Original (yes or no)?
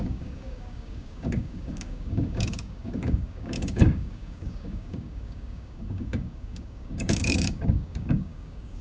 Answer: no